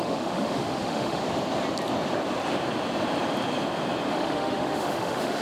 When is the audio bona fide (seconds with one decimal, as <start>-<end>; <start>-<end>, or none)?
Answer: 1.2-4.1